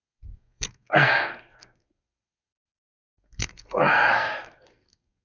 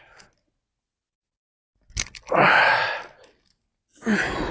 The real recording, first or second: second